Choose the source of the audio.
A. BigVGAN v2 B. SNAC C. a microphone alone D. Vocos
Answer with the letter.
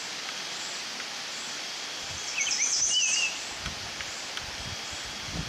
A